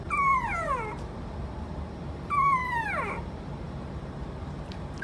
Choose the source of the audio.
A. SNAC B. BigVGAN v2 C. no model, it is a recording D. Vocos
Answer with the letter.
B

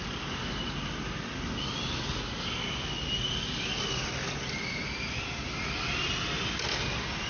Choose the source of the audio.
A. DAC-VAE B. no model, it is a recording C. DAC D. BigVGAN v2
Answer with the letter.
B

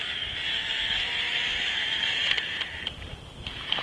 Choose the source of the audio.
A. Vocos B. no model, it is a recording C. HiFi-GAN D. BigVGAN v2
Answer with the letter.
D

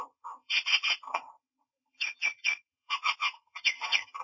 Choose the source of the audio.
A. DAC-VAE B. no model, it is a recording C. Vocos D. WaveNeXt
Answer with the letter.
D